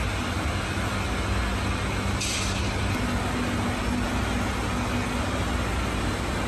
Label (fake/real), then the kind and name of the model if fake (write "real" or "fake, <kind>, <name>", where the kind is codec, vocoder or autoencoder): real